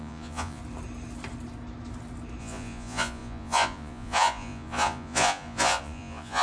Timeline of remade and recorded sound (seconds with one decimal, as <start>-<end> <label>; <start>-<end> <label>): 0.0-0.6 remade; 0.6-2.4 recorded; 2.4-6.4 remade

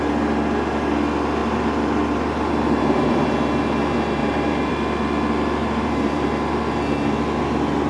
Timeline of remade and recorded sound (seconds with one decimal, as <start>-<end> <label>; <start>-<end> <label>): 0.0-1.4 recorded; 1.4-3.3 remade; 3.3-4.2 recorded; 4.2-4.7 remade; 4.7-5.6 recorded; 5.6-6.3 remade; 6.3-7.9 recorded

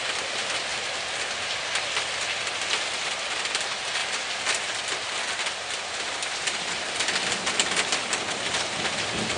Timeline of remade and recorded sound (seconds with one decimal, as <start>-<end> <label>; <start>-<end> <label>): 0.0-9.4 recorded

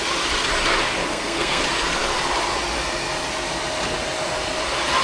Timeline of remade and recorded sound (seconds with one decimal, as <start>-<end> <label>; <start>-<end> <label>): 0.0-1.1 recorded; 1.1-1.6 remade; 1.6-5.0 recorded